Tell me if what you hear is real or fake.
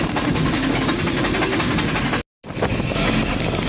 real